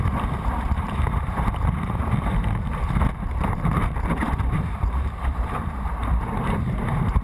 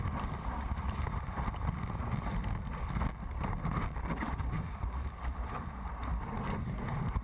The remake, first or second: first